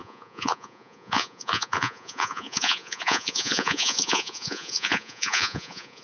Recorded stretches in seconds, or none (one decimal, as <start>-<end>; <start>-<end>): none